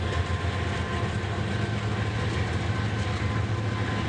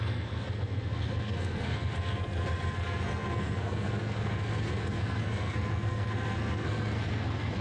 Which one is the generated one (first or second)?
second